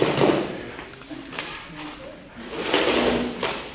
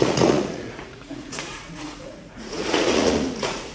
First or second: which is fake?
second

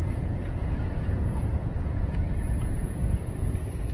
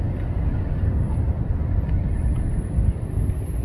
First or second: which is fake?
first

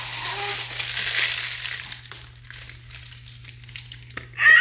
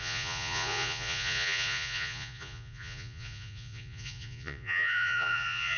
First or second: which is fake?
second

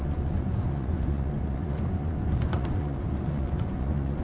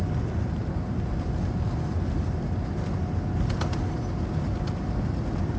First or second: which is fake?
first